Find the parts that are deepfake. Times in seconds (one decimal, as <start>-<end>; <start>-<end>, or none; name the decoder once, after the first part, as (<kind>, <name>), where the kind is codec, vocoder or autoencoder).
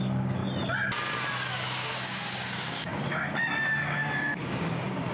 0.0-0.4 (codec, DAC); 1.5-5.1